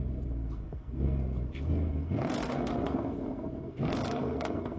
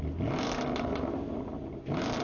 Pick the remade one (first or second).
first